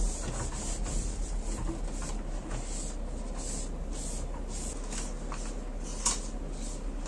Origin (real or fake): real